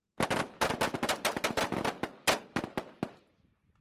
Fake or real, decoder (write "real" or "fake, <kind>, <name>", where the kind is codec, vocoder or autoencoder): real